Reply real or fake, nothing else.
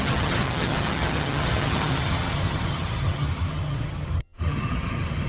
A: fake